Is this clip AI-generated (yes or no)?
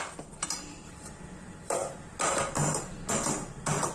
no